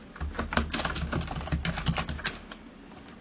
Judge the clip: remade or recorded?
recorded